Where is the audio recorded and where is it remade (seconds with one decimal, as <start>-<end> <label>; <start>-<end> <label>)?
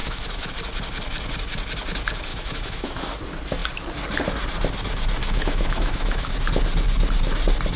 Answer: 0.0-0.5 remade; 0.5-2.3 recorded; 2.3-3.1 remade; 3.1-5.2 recorded; 5.2-6.3 remade; 6.3-7.8 recorded